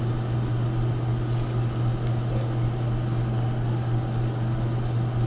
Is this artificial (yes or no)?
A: no